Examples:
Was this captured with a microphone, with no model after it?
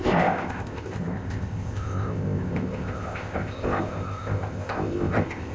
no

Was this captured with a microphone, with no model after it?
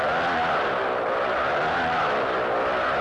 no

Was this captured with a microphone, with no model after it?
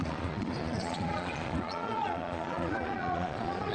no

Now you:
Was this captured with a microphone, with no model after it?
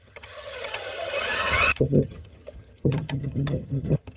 no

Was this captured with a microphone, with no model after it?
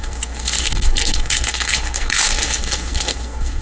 no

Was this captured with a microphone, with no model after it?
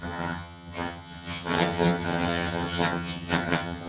no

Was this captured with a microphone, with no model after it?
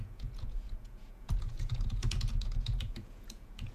no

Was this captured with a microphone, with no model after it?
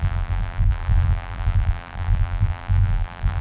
no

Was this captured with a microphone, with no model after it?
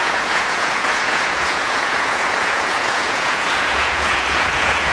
no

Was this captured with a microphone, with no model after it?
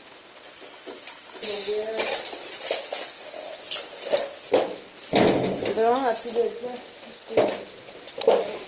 yes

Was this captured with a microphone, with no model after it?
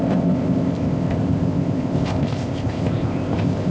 no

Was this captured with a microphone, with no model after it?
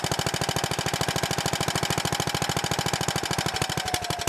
yes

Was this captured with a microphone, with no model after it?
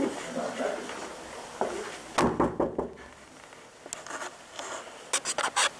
yes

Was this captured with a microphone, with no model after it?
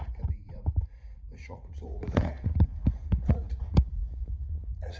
no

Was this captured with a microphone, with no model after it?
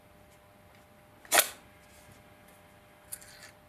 yes